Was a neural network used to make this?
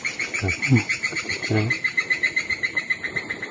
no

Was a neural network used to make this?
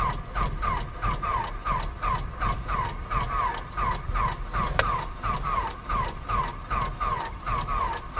no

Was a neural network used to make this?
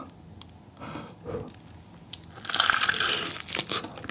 no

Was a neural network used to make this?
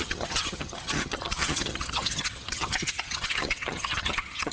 yes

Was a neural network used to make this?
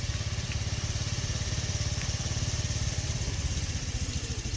yes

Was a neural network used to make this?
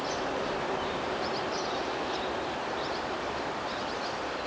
yes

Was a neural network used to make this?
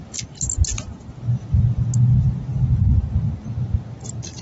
no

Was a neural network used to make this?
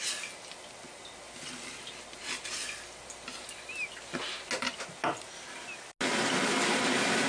no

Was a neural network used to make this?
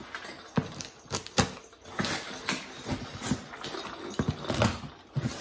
no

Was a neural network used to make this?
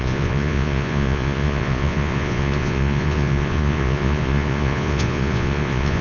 yes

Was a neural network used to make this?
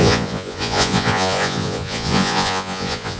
yes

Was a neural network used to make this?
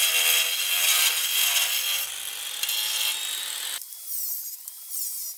no